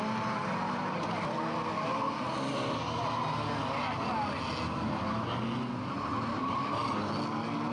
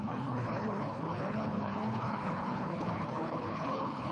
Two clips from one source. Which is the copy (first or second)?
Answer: second